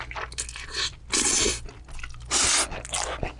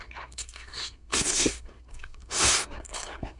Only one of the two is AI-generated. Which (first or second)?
second